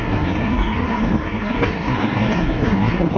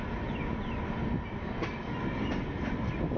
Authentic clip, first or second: second